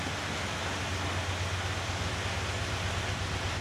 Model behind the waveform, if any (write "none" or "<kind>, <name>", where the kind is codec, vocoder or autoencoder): none